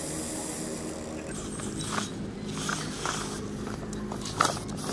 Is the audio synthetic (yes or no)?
no